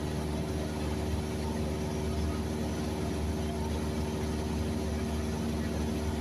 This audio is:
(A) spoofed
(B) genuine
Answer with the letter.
B